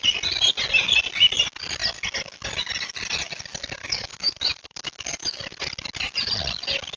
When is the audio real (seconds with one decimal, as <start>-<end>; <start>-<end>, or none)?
0.0-3.8; 5.4-7.0